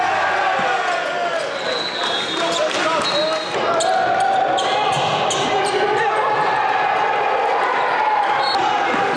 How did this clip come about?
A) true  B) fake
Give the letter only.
A